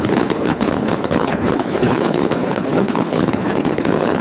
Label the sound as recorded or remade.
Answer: remade